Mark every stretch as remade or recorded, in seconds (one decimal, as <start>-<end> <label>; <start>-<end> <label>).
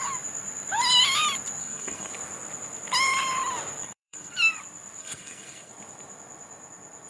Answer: 0.0-1.6 recorded; 1.6-2.1 remade; 2.1-3.8 recorded; 3.8-4.3 remade; 4.3-5.0 recorded; 5.0-5.7 remade; 5.7-7.1 recorded